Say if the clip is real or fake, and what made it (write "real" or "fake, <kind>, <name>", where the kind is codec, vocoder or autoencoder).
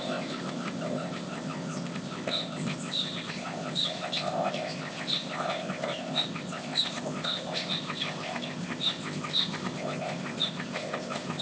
fake, codec, ZipCodec